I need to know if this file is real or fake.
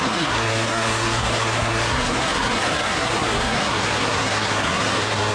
fake